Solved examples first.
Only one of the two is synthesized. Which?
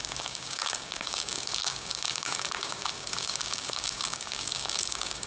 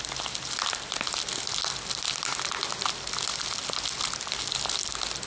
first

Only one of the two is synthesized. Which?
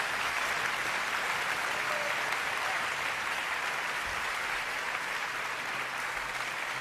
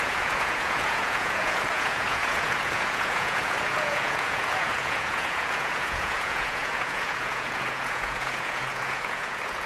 second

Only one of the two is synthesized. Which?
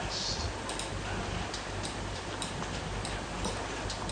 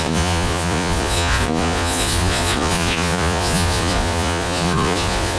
second